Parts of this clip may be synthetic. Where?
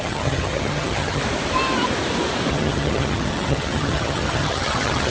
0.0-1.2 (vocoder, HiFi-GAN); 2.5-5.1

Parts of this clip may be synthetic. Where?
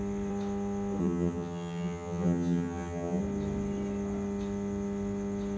1.0-3.2 (vocoder, HiFi-GAN)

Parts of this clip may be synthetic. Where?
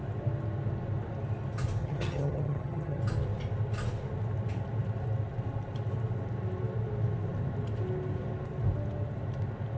1.8-3.0 (vocoder, HiFi-GAN)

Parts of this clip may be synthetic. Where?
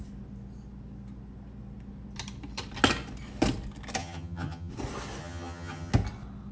4.0-4.7 (vocoder, HiFi-GAN); 5.2-5.9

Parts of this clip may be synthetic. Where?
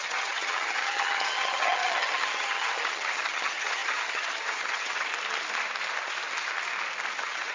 0.0-5.1 (vocoder, HiFi-GAN); 7.1-7.5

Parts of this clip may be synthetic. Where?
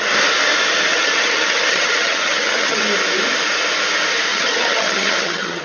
0.9-2.8 (vocoder, HiFi-GAN); 4.3-5.6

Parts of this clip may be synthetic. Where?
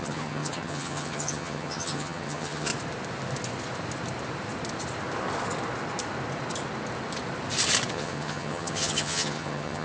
0.0-2.7 (vocoder, HiFi-GAN); 7.9-9.8